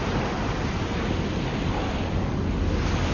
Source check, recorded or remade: recorded